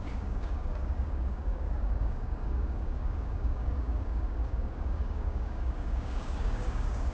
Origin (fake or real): fake